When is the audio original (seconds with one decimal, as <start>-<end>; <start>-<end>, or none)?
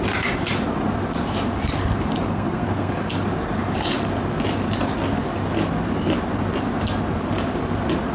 0.0-2.2; 2.9-8.1